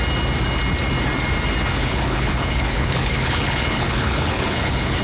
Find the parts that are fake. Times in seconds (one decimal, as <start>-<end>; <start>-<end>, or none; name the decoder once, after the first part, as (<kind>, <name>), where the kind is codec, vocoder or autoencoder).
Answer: 1.7-5.0 (codec, HILCodec)

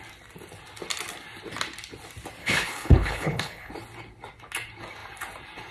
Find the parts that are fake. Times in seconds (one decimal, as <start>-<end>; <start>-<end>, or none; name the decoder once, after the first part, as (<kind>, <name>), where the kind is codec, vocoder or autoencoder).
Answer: 2.4-3.7 (codec, HILCodec)

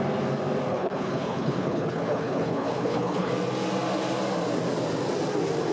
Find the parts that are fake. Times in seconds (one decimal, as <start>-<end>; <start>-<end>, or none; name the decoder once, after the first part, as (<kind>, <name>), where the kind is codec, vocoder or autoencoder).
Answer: 0.7-3.3 (codec, HILCodec)

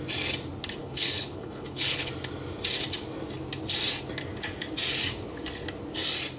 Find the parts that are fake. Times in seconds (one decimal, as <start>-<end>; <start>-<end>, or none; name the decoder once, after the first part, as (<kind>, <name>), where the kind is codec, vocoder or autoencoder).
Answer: 0.8-2.1 (codec, HILCodec)

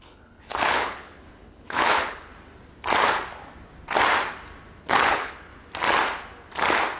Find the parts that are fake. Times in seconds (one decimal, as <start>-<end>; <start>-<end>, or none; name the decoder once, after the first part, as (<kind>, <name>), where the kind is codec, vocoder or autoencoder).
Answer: 0.0-2.3 (codec, HILCodec); 4.8-5.5

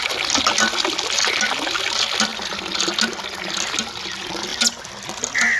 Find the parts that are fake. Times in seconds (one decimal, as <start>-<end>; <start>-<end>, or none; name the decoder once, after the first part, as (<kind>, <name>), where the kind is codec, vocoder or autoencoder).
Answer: none

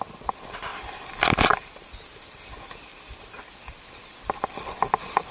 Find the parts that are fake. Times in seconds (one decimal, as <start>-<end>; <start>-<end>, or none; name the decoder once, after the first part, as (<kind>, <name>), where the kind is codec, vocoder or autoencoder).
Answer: none